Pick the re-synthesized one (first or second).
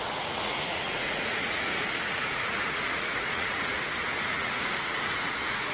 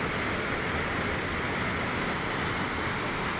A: first